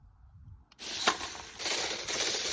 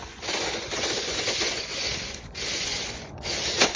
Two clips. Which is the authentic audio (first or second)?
first